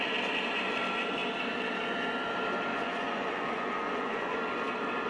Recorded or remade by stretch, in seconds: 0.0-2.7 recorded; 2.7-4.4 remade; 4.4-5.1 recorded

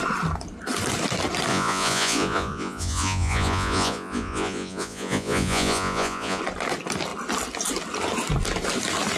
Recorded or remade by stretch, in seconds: 0.0-1.5 recorded; 1.5-6.4 remade; 6.4-9.2 recorded

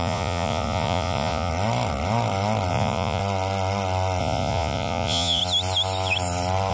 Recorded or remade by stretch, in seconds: 0.0-1.5 remade; 1.5-2.7 recorded; 2.7-3.2 remade; 3.2-4.2 recorded; 4.2-5.4 remade; 5.4-6.7 recorded

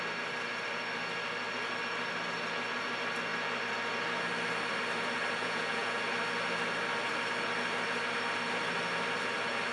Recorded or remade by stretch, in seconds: 0.0-5.4 recorded; 5.4-6.0 remade; 6.0-9.7 recorded

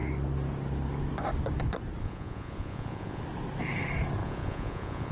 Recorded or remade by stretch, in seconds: 0.0-2.0 recorded; 2.0-3.2 remade; 3.2-4.2 recorded; 4.2-5.1 remade

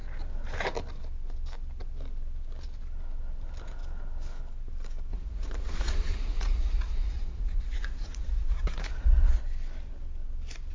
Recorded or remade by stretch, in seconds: 0.0-5.1 recorded; 5.1-9.4 remade; 9.4-10.7 recorded

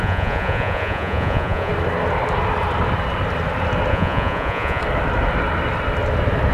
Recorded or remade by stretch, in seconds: 0.0-1.7 remade; 1.7-3.9 recorded; 3.9-4.8 remade; 4.8-6.5 recorded

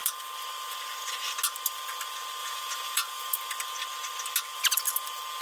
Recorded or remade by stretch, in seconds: 0.0-2.4 recorded; 2.4-3.4 remade; 3.4-5.4 recorded